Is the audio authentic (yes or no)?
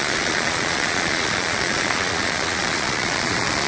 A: no